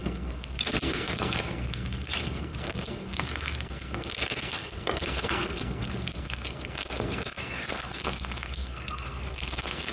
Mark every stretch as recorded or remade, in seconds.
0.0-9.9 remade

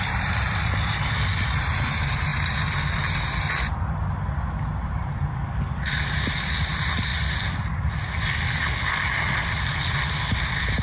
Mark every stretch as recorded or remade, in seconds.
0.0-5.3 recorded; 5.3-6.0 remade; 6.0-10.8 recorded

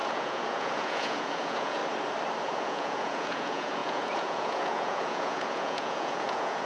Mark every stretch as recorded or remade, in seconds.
0.0-1.8 remade; 1.8-2.4 recorded; 2.4-6.7 remade

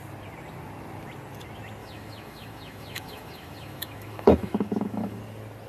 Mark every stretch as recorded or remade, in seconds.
0.0-1.8 recorded; 1.8-5.2 remade; 5.2-5.7 recorded

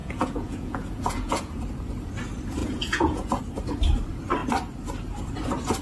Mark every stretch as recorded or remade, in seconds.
0.0-1.6 remade; 1.6-2.6 recorded; 2.6-3.4 remade; 3.4-5.8 recorded

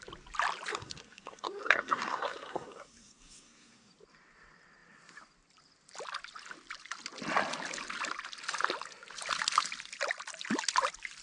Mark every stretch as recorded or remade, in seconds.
0.0-0.7 recorded; 0.7-3.9 remade; 3.9-11.2 recorded

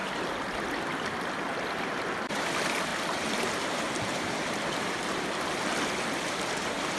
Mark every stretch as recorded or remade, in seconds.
0.0-7.0 recorded